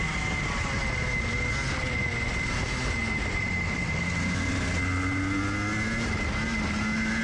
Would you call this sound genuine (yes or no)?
yes